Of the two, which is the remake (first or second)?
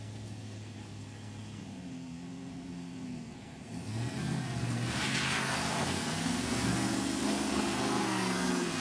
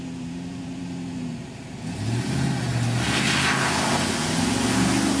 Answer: first